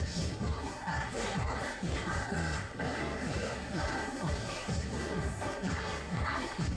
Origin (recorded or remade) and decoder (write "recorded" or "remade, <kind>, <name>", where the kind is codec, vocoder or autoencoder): remade, codec, SNAC